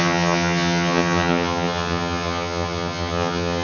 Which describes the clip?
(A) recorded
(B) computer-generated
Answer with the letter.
B